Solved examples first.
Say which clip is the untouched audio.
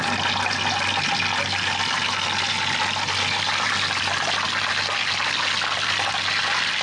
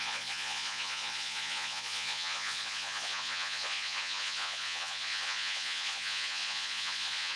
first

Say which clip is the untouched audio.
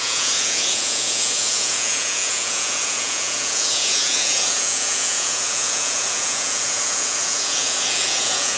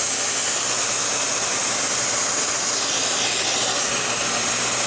second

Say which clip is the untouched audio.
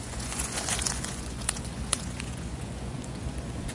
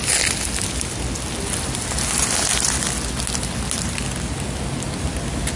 second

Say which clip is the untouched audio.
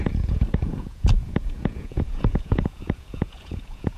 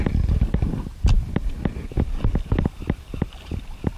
second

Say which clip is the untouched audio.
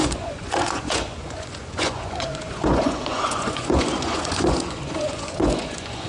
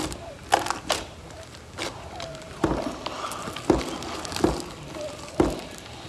second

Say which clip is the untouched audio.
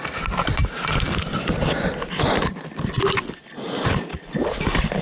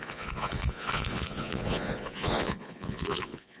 first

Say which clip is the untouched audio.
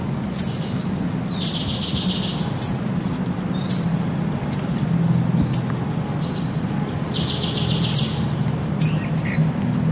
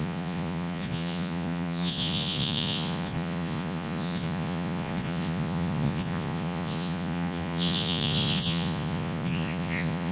first